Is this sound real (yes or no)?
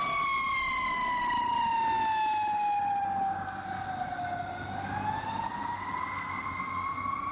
yes